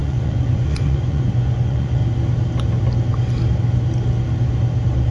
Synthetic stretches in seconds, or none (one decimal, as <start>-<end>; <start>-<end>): 0.0-2.0